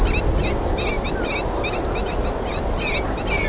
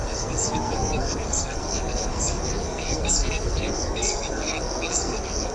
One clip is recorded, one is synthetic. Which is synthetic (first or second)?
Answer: second